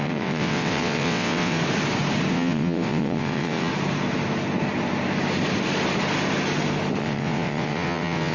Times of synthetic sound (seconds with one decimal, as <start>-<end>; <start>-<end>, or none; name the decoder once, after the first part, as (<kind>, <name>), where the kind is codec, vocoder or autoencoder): 0.0-1.6 (vocoder, WaveNeXt); 2.3-3.7; 7.0-8.3